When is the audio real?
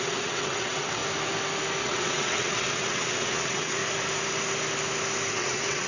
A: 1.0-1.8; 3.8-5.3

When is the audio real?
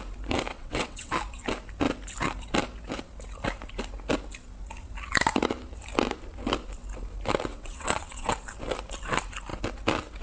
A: 0.0-0.5; 1.1-7.5; 8.3-10.2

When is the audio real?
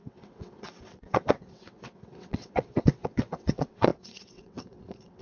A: none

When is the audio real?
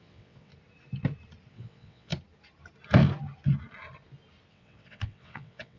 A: 0.5-1.5; 2.1-4.5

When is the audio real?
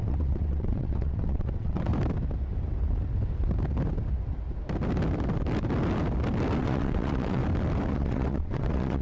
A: 1.9-6.6; 7.4-7.9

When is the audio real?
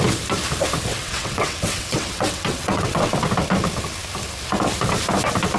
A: 0.0-0.9; 3.1-5.6